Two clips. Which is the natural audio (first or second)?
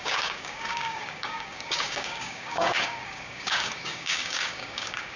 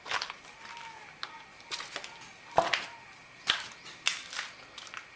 second